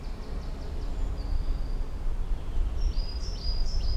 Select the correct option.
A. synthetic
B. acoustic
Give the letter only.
B